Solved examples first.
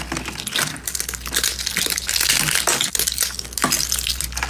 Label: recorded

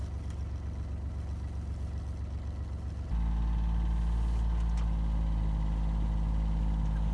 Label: recorded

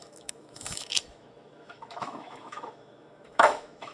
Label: remade